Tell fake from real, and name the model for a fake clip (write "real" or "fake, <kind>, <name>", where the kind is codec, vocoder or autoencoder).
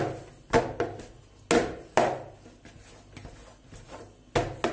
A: real